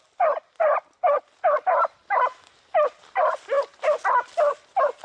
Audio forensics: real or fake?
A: real